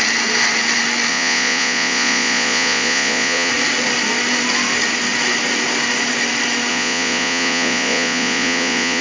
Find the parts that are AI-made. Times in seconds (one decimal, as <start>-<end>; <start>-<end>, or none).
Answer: 1.1-3.5; 6.7-9.0